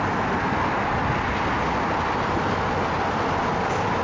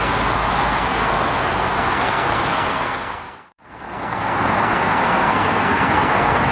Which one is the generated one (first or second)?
second